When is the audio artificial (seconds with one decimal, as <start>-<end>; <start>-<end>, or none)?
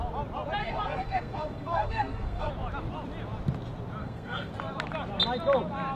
0.6-2.5; 4.0-4.5